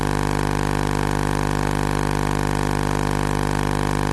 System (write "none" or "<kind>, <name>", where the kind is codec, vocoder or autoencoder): none